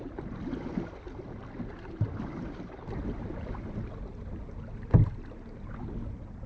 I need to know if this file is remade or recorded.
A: recorded